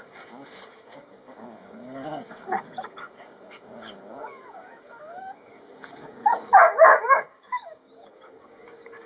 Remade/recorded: remade